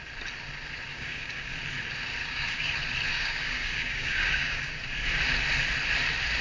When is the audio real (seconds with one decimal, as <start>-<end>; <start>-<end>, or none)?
0.0-0.9; 1.5-2.2; 2.7-3.1; 4.6-6.4